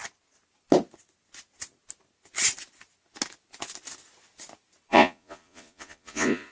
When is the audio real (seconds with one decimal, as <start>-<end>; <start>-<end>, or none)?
0.0-4.9